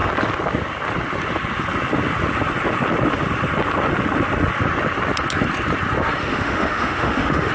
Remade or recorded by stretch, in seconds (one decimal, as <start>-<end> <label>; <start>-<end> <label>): 0.0-6.2 recorded; 6.2-7.5 remade